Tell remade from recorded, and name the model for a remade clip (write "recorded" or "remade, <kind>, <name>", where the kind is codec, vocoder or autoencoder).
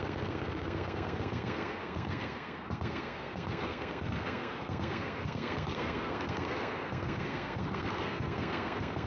remade, codec, SNAC